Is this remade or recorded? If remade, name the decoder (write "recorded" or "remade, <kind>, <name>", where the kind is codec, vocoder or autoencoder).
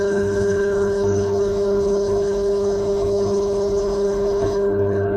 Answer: remade, codec, HILCodec